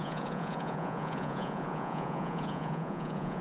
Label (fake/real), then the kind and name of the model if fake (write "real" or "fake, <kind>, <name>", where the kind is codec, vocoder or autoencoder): fake, vocoder, Vocos